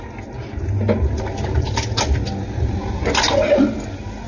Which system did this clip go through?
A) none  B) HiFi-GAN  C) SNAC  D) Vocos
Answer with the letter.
A